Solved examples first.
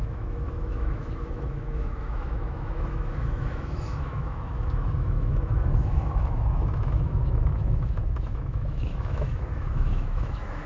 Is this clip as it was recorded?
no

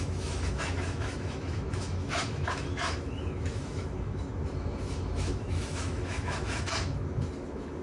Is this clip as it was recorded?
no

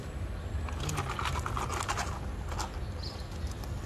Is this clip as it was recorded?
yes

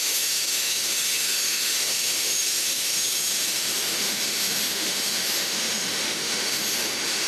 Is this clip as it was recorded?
no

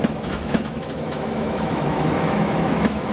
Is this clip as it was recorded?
no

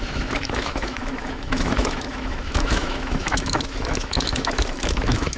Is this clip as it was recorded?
no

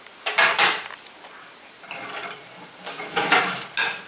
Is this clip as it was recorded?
yes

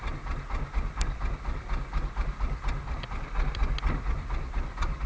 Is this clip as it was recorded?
yes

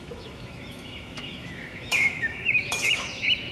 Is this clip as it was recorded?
no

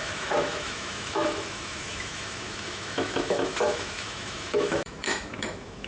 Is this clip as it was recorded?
no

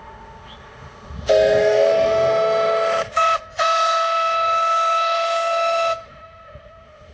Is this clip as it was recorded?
no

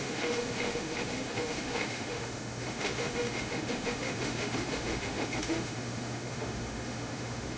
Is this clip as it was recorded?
no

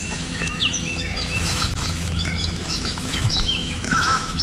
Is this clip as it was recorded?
no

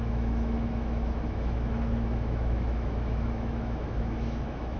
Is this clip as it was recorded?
no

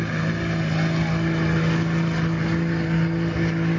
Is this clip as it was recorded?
yes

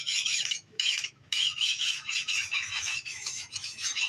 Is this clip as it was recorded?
no